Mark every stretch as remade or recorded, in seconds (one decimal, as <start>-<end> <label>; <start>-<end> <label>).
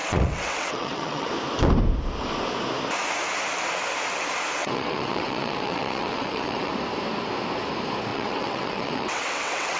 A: 0.0-1.3 remade; 1.3-4.6 recorded; 4.6-6.7 remade; 6.7-8.1 recorded; 8.1-9.8 remade